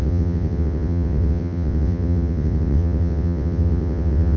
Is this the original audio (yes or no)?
no